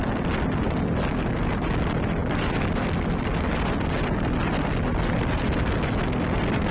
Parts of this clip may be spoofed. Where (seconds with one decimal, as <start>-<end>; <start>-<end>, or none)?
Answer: none